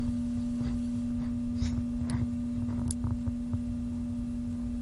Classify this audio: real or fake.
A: real